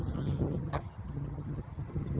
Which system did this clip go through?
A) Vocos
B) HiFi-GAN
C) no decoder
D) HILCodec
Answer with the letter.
B